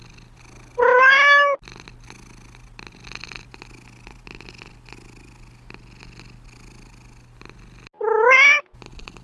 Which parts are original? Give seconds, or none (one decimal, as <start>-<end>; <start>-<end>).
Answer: 0.0-9.2